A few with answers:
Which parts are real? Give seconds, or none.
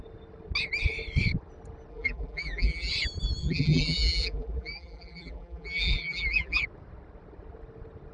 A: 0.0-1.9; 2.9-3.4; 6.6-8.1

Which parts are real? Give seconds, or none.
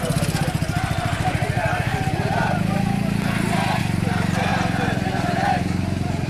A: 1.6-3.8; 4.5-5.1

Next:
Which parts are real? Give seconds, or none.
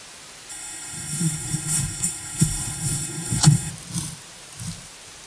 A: 0.0-0.5; 3.7-5.3